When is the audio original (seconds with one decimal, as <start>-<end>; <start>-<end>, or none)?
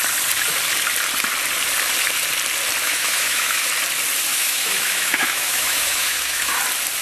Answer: 0.0-2.8; 3.7-4.3; 6.6-7.0